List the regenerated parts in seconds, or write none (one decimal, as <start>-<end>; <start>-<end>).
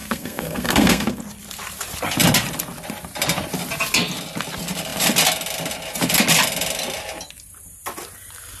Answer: 0.0-1.2